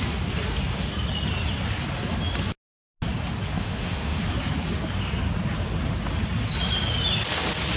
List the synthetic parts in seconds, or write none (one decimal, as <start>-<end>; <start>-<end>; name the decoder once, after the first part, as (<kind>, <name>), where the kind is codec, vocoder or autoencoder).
3.6-4.2 (autoencoder, DAC-VAE)